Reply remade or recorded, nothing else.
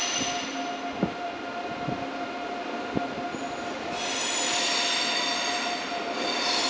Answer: recorded